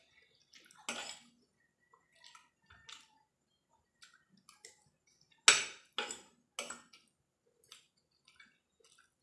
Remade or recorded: recorded